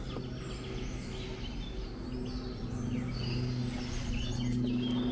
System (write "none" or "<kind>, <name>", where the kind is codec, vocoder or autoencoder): none